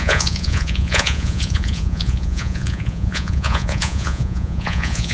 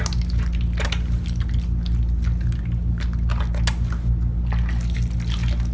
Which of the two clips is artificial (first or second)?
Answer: first